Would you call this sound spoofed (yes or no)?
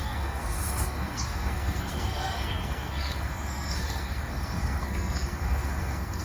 yes